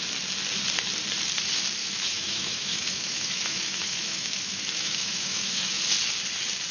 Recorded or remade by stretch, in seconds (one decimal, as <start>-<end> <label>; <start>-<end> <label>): 0.0-1.8 recorded; 1.8-5.8 remade; 5.8-6.7 recorded